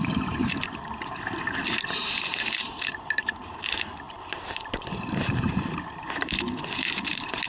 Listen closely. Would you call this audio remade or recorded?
remade